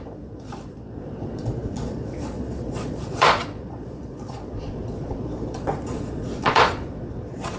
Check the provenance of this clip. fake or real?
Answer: fake